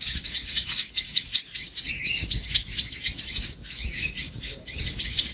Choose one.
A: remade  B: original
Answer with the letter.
A